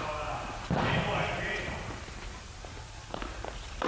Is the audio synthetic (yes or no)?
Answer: yes